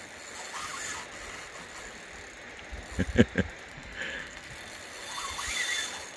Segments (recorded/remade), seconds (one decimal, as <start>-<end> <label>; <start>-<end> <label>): 0.0-3.7 recorded; 3.7-4.5 remade; 4.5-6.2 recorded